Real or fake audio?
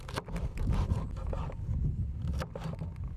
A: real